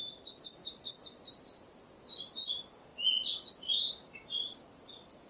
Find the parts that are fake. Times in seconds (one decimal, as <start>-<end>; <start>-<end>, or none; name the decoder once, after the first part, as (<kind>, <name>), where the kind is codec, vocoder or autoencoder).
0.6-2.2 (vocoder, BigVGAN v2); 4.0-4.7